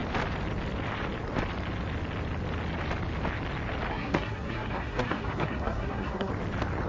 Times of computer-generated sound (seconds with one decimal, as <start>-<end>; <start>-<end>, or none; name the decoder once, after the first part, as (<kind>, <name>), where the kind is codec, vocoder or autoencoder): 3.9-6.3 (codec, SNAC)